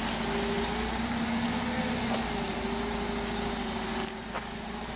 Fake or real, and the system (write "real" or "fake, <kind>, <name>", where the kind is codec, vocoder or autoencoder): real